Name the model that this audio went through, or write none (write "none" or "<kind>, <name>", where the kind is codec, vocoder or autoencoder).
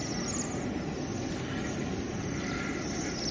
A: none